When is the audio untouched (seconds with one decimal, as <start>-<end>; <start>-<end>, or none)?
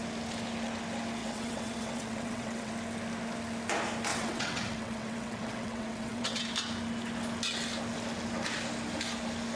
0.0-1.2; 2.7-4.1; 6.4-9.6